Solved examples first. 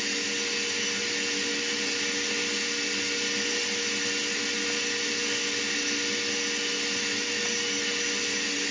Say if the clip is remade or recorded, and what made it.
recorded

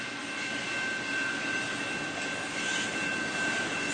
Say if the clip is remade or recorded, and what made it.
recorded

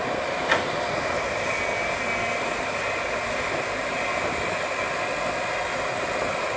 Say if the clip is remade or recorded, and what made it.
recorded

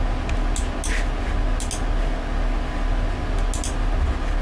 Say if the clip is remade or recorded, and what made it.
recorded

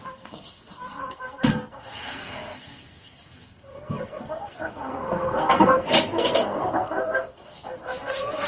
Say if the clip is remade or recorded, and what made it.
remade, codec, SNAC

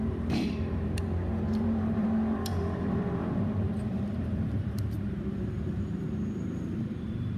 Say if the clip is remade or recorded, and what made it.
remade, vocoder, BigVGAN v2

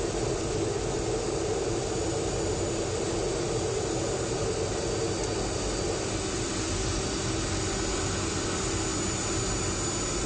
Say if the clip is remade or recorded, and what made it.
recorded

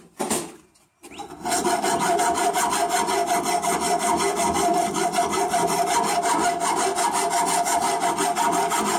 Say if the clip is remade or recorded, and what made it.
recorded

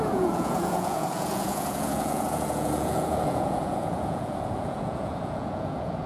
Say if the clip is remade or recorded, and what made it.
remade, vocoder, Vocos